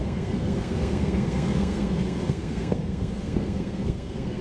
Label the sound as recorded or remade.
remade